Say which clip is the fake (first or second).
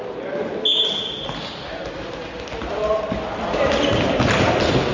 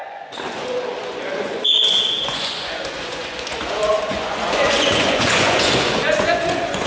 second